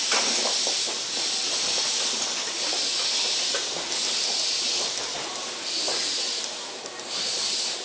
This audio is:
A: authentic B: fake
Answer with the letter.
A